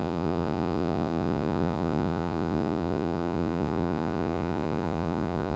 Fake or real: fake